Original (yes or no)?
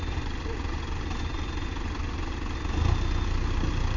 yes